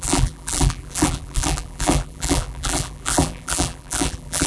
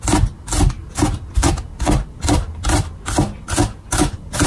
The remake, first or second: first